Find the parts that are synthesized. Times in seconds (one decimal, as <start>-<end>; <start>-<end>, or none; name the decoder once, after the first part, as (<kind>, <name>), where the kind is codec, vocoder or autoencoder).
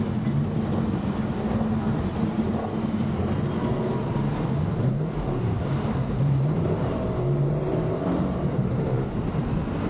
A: 4.7-8.6 (vocoder, BigVGAN v2)